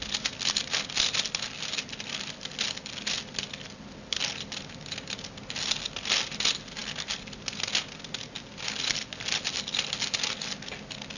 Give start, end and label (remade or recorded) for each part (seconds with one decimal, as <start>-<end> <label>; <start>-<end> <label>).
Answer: 0.0-11.2 recorded